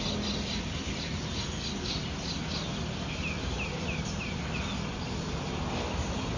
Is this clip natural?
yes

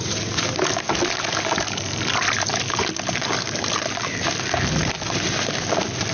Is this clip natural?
yes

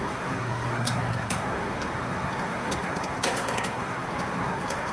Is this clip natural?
no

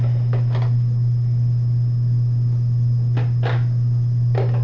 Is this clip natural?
yes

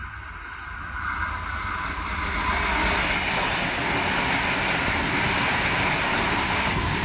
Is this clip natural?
yes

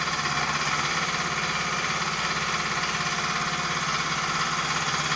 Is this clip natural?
yes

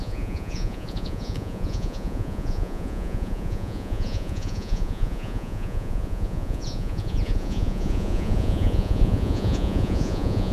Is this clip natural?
no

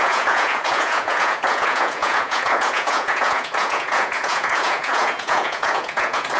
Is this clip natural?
no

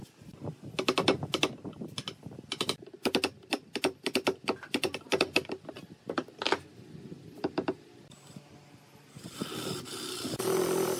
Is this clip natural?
yes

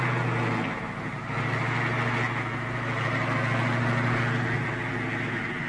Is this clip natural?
yes